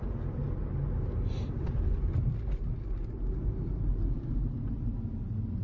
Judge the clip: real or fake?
real